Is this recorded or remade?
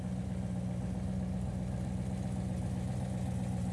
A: recorded